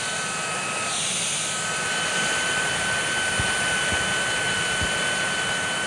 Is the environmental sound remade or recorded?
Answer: recorded